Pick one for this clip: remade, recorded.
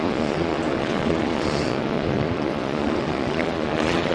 remade